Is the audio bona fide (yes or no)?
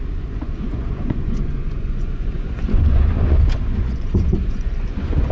no